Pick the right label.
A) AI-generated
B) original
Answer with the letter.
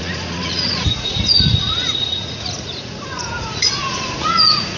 A